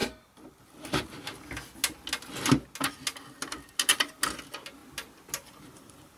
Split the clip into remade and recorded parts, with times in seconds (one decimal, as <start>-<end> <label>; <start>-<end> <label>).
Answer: 0.0-6.2 recorded